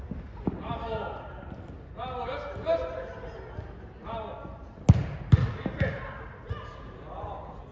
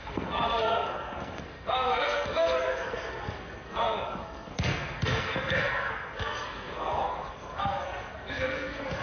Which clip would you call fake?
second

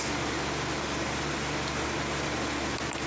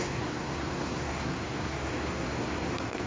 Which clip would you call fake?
second